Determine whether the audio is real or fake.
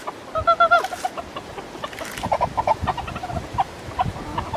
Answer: real